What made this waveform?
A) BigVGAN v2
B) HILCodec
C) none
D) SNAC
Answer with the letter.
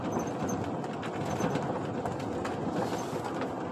C